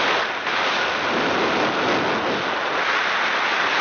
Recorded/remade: recorded